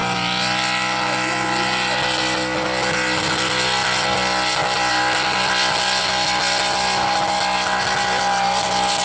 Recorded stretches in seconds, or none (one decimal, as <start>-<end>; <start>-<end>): 0.0-9.0